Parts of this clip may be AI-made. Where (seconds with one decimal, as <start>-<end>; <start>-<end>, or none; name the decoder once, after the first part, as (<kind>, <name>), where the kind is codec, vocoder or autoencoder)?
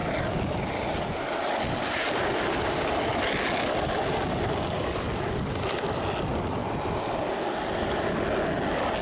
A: none